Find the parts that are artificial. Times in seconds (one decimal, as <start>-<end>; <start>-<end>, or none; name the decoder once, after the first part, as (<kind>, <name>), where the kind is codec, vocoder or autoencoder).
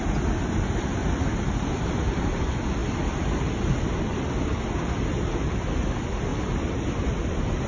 none